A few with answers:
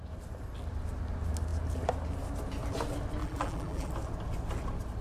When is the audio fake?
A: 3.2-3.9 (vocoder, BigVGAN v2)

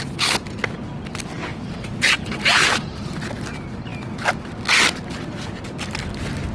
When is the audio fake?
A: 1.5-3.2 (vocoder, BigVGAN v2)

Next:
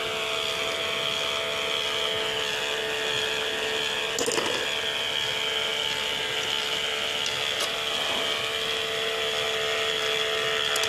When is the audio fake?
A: none

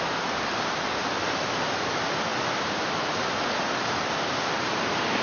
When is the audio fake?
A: none

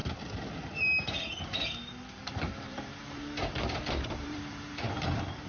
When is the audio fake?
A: 2.3-5.5 (vocoder, BigVGAN v2)